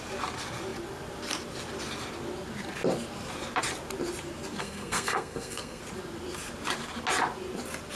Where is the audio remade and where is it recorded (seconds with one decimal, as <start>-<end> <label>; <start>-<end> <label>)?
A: 0.0-4.6 recorded; 4.6-5.8 remade; 5.8-8.0 recorded